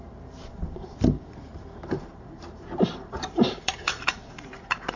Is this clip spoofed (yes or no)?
yes